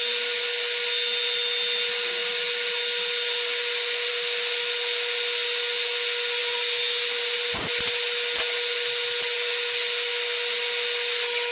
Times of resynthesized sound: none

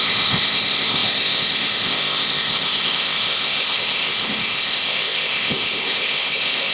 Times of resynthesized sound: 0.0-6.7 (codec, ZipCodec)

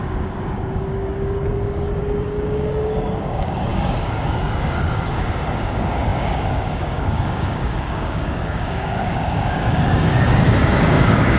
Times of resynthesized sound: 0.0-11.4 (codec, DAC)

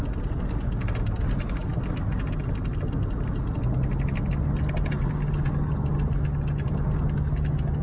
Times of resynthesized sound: none